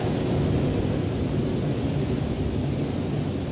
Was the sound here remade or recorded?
recorded